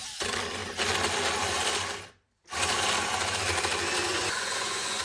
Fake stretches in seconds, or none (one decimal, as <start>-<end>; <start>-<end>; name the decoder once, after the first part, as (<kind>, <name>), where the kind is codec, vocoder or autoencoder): 4.1-5.0 (vocoder, Vocos)